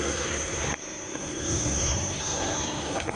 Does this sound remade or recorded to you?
remade